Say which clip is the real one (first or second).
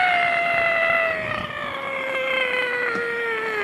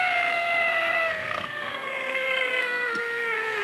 first